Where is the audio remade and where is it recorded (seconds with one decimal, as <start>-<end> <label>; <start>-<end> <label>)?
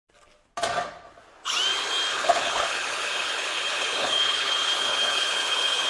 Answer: 0.0-2.1 recorded; 2.1-5.9 remade